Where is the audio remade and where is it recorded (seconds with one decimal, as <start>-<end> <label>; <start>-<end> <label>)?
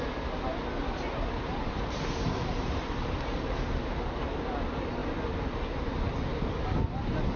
0.0-1.5 recorded; 1.5-3.2 remade; 3.2-7.4 recorded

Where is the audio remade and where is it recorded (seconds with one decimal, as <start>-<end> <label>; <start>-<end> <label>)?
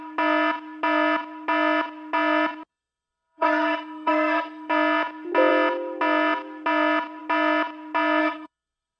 0.0-2.7 recorded; 2.7-4.7 remade; 4.7-8.2 recorded; 8.2-9.0 remade